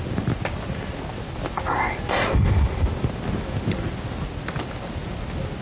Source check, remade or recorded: recorded